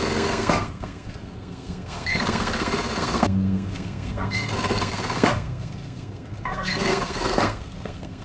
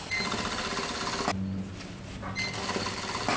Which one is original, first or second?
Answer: second